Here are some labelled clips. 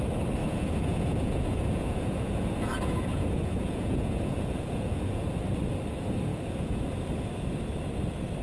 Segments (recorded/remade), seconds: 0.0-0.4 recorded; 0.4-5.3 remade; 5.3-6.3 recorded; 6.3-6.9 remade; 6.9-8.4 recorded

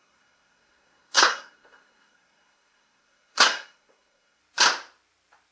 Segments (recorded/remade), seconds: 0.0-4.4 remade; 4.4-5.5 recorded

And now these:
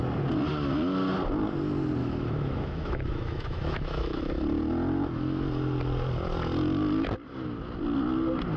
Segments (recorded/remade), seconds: 0.0-2.0 recorded; 2.0-4.2 remade; 4.2-8.6 recorded